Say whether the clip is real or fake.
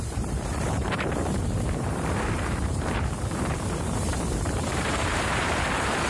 fake